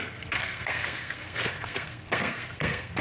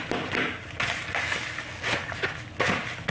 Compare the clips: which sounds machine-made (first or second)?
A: first